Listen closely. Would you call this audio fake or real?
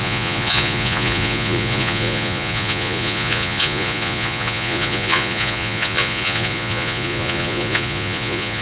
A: fake